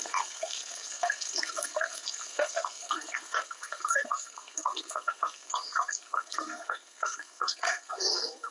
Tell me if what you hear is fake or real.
fake